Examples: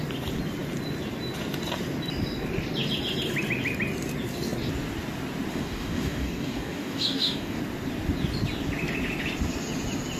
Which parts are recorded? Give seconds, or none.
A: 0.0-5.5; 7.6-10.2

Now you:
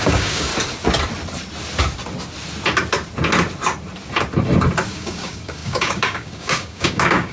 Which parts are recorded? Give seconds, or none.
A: 0.5-4.9

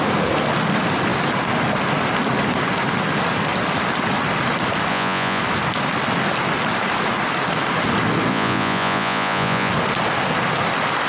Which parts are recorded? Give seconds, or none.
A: 0.0-4.9; 5.4-8.3; 9.7-11.1

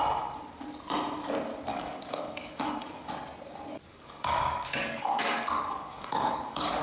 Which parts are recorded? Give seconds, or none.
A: 0.0-1.7; 3.1-3.9

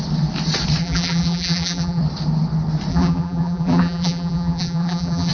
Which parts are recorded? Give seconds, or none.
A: 0.0-0.8; 2.0-2.9

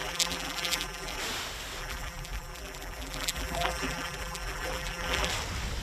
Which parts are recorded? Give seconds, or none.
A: 1.2-1.8; 5.3-5.8

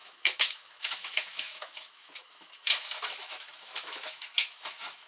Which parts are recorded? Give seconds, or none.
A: none

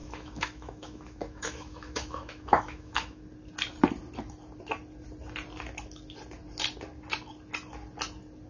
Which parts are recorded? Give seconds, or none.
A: 3.2-8.5